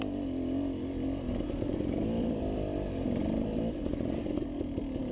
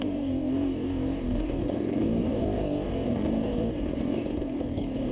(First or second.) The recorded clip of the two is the first